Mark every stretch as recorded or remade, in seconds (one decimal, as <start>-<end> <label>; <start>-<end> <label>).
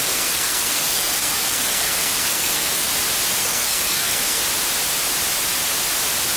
0.0-2.9 remade; 2.9-3.4 recorded; 3.4-4.4 remade; 4.4-6.4 recorded